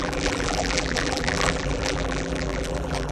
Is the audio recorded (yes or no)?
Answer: no